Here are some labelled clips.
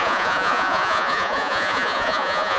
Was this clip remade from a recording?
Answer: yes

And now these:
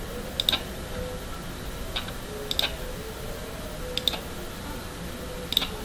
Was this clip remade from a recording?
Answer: no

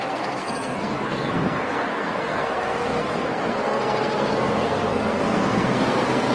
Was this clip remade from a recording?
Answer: yes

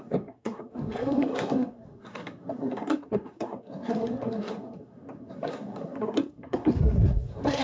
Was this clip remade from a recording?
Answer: yes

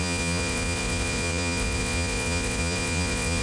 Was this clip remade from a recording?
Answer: yes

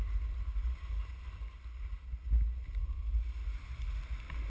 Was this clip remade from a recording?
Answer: no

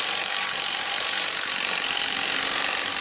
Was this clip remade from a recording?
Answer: yes